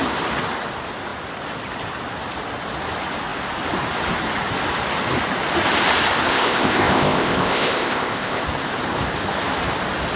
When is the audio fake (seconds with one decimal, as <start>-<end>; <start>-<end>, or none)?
6.3-8.4